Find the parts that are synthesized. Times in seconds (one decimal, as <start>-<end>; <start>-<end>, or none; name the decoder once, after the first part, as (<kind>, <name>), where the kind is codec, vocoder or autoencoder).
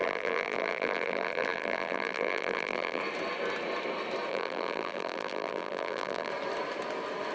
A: 0.0-3.0 (vocoder, BigVGAN v2); 4.3-6.3